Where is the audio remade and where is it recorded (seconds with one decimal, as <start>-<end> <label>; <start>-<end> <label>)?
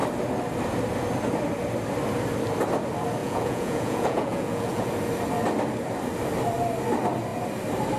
0.0-3.2 recorded; 3.2-4.9 remade; 4.9-8.0 recorded